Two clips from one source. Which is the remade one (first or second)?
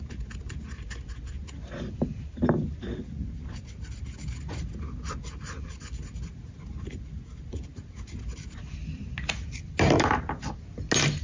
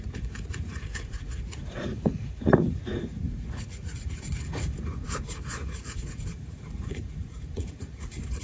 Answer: second